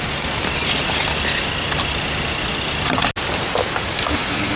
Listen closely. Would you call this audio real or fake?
real